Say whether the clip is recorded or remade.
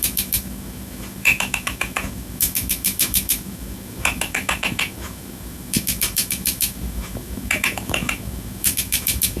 remade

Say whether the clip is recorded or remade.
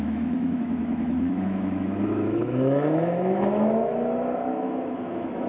remade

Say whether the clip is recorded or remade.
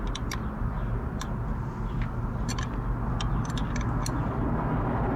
recorded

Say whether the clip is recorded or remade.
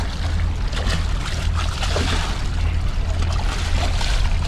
recorded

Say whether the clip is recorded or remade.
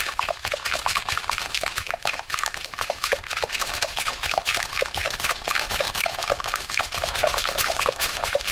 remade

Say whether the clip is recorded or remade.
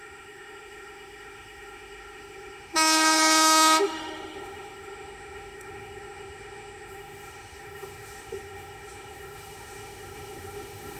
remade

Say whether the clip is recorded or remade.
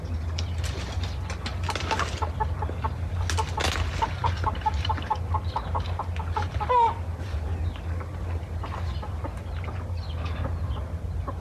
recorded